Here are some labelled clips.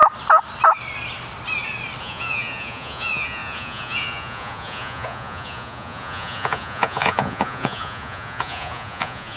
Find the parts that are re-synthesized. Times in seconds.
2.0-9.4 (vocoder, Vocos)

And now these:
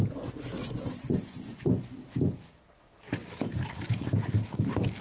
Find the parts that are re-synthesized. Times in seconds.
0.6-2.0 (vocoder, Vocos)

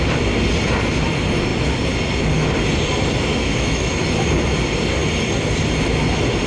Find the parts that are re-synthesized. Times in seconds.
3.3-3.9 (autoencoder, DAC-VAE)

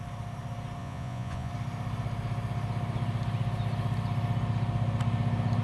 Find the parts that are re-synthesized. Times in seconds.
0.8-1.5 (vocoder, Vocos)

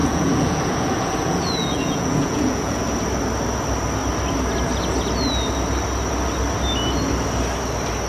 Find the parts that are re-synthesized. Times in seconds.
0.0-2.8 (vocoder, Vocos)